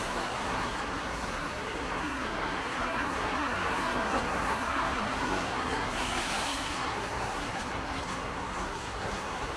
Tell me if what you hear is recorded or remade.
remade